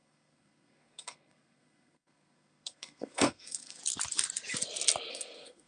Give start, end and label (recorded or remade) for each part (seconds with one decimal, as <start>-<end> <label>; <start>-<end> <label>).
0.0-3.8 remade; 3.8-5.1 recorded; 5.1-5.7 remade